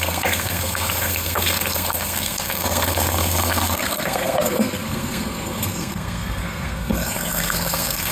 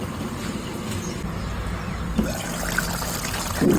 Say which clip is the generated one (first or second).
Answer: first